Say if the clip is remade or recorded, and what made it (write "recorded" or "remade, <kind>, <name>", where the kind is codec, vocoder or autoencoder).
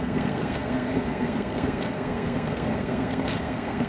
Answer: remade, codec, SNAC